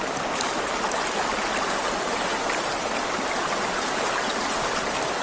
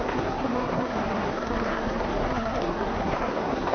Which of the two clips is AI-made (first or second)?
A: second